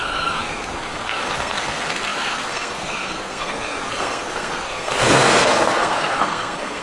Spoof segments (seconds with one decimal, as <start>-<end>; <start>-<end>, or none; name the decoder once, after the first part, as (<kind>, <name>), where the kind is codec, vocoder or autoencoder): 0.0-6.8 (codec, SNAC)